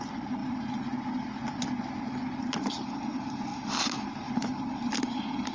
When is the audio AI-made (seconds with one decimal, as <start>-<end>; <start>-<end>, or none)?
0.0-0.4; 3.0-3.5; 4.3-5.5